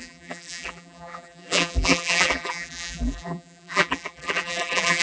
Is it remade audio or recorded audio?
remade